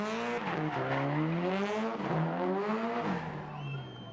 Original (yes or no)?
yes